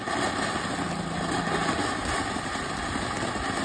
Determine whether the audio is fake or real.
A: real